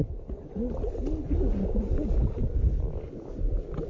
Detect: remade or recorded recorded